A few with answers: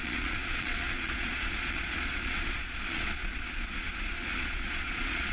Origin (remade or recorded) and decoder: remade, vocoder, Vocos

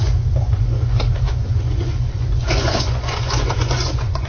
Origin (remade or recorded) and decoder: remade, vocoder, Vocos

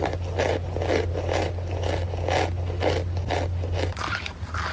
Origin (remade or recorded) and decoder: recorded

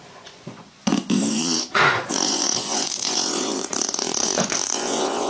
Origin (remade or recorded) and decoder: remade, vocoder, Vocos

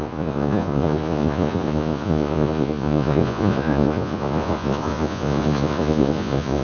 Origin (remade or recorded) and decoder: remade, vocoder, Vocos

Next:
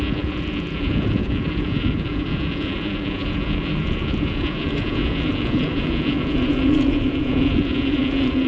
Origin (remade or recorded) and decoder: remade, vocoder, Vocos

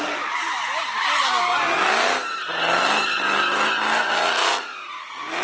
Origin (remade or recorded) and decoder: recorded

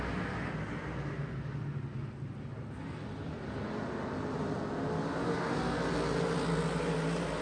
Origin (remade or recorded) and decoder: recorded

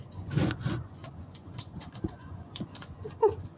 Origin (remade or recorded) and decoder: remade, vocoder, Vocos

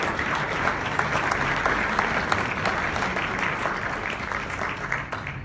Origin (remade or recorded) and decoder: recorded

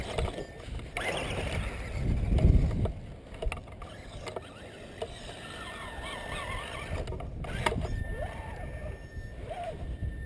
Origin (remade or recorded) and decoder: recorded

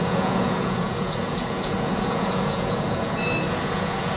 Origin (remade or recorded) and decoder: remade, vocoder, Vocos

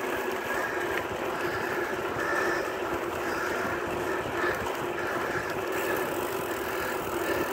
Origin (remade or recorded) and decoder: recorded